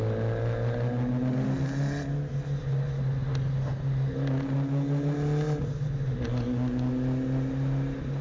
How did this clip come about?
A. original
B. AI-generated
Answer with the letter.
A